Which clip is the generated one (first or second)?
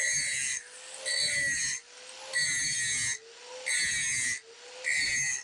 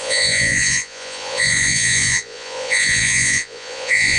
second